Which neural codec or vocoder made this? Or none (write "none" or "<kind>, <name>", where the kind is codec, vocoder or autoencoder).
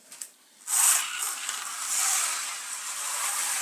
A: none